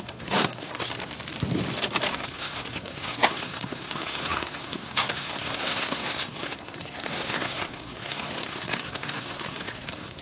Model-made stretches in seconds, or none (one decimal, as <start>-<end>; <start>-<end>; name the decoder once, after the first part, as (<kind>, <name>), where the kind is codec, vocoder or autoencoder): 0.0-0.9 (codec, SNAC); 2.1-10.2